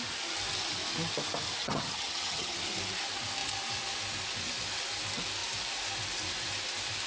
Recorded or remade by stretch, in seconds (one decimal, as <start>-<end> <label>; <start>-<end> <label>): 0.0-1.6 recorded; 1.6-2.6 remade; 2.6-7.1 recorded